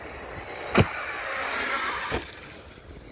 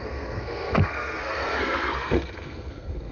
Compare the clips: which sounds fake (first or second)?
second